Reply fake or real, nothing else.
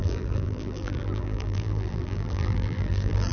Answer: fake